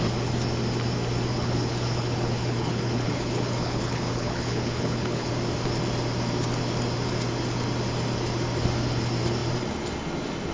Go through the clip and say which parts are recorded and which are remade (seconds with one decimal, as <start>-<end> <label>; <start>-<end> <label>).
0.0-1.3 recorded; 1.3-5.3 remade; 5.3-10.5 recorded